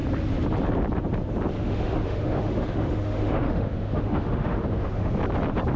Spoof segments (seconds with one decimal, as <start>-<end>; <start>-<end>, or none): 1.6-5.1

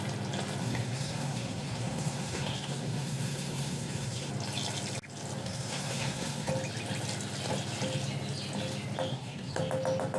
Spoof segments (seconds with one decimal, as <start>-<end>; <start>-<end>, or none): 0.6-4.3; 5.4-6.5; 9.1-9.6

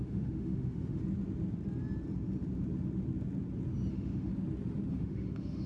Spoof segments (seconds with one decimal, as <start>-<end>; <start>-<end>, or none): 0.0-1.0; 3.9-4.3; 4.9-5.7

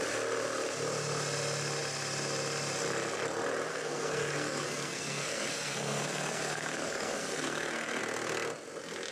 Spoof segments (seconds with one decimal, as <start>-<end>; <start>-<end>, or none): 3.7-8.0